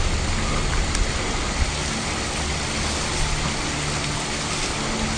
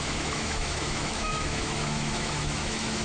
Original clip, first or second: first